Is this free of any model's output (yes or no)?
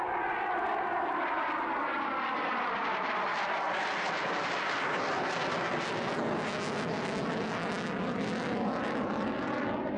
yes